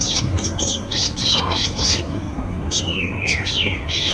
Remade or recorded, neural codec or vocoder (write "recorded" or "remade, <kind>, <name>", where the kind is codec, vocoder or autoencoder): remade, codec, SNAC